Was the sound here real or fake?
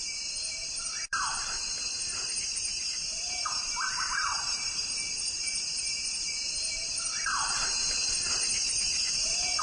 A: fake